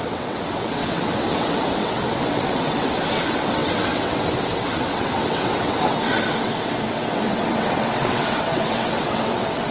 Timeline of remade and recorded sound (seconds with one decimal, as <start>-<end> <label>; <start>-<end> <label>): 0.0-9.7 remade